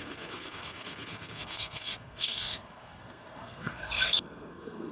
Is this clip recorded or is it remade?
remade